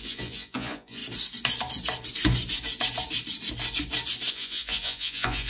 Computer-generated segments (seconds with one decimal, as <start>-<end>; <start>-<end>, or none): 0.0-1.0; 4.3-5.5